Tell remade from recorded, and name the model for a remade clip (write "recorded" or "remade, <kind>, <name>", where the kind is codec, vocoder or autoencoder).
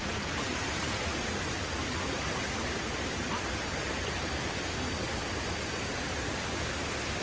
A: recorded